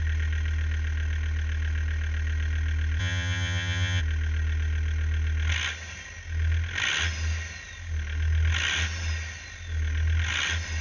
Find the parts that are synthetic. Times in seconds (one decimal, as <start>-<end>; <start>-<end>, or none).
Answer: 3.0-4.0